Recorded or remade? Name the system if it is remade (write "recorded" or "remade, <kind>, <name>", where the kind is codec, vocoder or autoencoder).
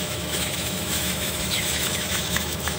remade, autoencoder, DAC-VAE